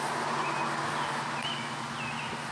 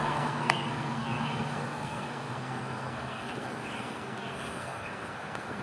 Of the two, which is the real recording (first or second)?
first